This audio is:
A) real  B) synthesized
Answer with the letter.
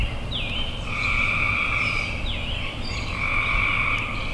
A